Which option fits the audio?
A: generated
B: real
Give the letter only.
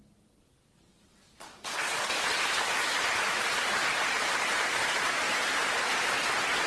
B